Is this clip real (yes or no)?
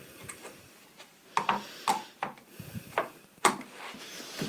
no